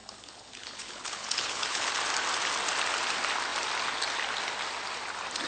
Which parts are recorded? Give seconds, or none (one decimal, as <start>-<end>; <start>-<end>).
1.9-5.5